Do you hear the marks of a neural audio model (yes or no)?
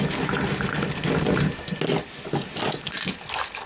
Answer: no